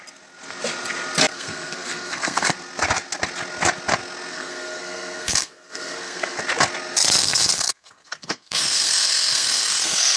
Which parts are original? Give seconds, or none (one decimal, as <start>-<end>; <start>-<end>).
0.0-1.3; 2.5-4.3; 6.4-7.2